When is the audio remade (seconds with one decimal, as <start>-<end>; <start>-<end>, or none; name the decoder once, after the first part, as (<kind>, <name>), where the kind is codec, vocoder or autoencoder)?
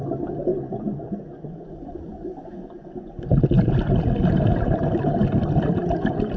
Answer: 0.5-3.1 (vocoder, Vocos)